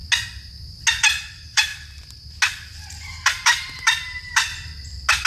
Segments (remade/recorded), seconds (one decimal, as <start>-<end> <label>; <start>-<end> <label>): 0.0-0.9 recorded; 0.9-1.7 remade; 1.7-2.9 recorded; 2.9-4.5 remade; 4.5-5.3 recorded